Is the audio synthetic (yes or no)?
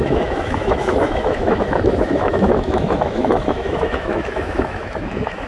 yes